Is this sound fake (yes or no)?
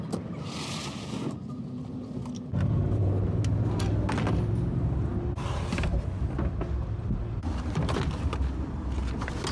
no